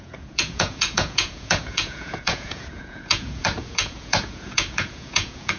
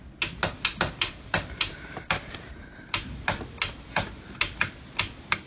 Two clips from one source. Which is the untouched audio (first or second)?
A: second